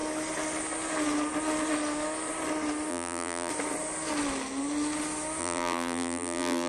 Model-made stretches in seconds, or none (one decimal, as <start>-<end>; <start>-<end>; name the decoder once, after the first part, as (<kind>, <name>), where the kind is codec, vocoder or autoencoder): 2.9-3.5 (vocoder, BigVGAN v2); 5.4-6.7